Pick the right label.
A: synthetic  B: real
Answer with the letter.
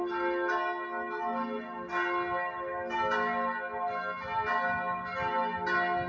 B